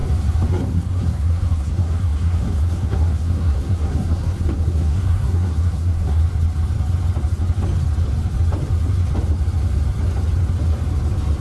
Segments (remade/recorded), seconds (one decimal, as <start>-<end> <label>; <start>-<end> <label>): 0.0-0.5 recorded; 0.5-6.2 remade; 6.2-11.4 recorded